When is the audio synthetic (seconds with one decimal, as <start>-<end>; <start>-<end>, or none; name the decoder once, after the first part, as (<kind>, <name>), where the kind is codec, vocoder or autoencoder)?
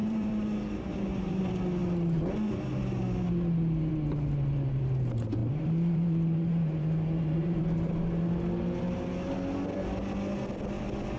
0.0-1.4 (vocoder, BigVGAN v2); 5.4-7.6